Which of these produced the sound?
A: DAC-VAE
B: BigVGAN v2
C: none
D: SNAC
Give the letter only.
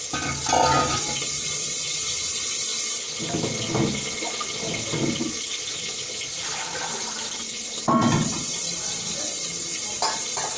C